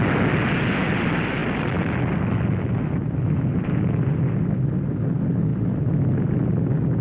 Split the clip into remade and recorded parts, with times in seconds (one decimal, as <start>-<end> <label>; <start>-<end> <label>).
0.0-1.4 recorded; 1.4-4.2 remade; 4.2-5.5 recorded; 5.5-7.0 remade